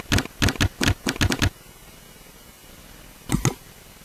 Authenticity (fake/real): real